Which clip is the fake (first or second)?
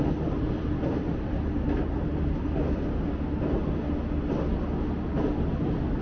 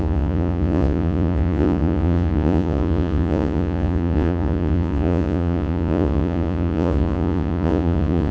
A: second